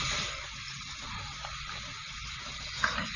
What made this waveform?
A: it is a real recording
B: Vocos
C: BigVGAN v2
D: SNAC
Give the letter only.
A